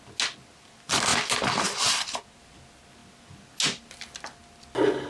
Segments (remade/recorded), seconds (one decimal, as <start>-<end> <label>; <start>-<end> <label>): 0.0-5.1 recorded